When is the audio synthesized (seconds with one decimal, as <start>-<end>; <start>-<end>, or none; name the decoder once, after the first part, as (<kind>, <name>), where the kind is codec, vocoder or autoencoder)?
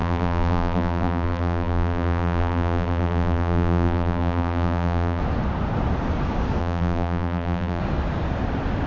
0.0-5.2 (vocoder, BigVGAN v2); 6.6-7.8